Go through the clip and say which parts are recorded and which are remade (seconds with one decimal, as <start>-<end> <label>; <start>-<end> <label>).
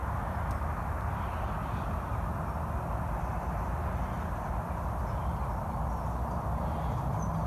0.0-7.5 recorded